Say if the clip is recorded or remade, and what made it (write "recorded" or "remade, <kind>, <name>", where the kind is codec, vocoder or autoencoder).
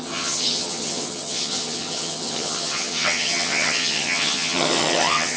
remade, vocoder, HiFi-GAN